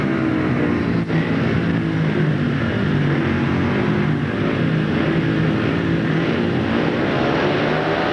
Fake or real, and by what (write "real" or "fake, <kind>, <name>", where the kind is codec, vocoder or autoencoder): real